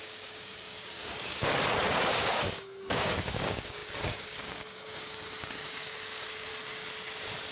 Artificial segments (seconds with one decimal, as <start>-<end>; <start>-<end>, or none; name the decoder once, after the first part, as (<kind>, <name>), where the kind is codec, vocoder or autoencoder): 0.0-1.5 (codec, DAC); 2.0-6.5